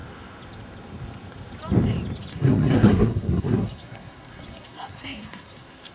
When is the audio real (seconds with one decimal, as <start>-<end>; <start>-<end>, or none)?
0.0-2.3